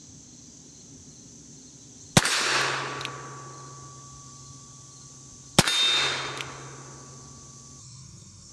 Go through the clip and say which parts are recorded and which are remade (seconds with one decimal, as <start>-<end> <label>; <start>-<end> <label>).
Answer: 0.0-7.8 recorded; 7.8-8.5 remade